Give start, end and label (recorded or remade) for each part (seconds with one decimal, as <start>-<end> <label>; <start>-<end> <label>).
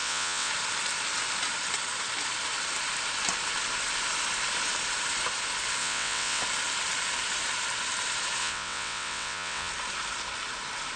0.0-0.5 remade; 0.5-5.8 recorded; 5.8-6.4 remade; 6.4-8.4 recorded; 8.4-9.7 remade; 9.7-11.0 recorded